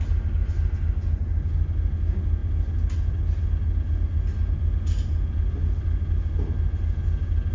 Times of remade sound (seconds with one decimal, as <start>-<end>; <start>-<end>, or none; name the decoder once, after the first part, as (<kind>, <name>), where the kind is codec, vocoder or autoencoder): none